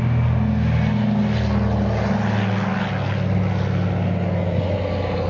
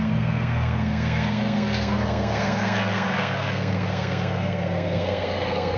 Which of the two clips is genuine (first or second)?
first